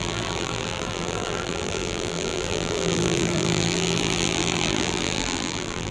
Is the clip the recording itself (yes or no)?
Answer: no